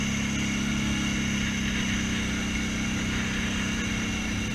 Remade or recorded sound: recorded